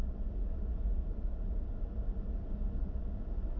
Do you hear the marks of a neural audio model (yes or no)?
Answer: no